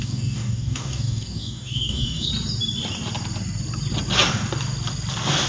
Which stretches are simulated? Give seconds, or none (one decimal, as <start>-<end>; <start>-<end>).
0.0-2.3